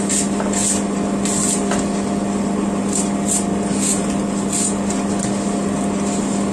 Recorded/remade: recorded